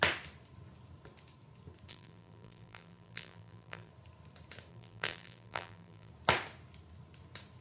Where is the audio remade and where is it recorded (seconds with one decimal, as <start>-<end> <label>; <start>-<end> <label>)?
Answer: 0.0-1.9 recorded; 1.9-3.9 remade; 3.9-4.7 recorded; 4.7-6.1 remade; 6.1-7.6 recorded